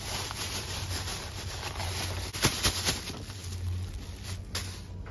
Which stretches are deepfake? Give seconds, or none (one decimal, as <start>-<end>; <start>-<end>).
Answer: none